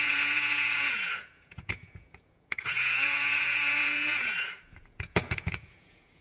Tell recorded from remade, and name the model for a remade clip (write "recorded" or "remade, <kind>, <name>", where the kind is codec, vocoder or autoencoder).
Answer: remade, vocoder, Vocos